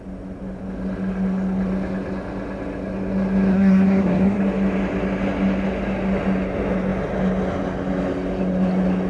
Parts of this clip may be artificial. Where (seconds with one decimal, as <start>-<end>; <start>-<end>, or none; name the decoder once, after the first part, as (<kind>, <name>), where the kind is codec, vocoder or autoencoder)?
3.5-4.4 (codec, SNAC)